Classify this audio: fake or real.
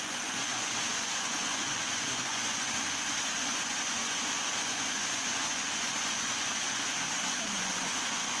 fake